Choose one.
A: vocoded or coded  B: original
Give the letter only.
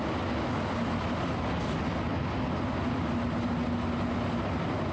B